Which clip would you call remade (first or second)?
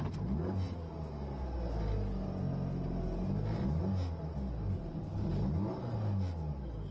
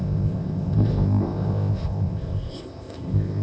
second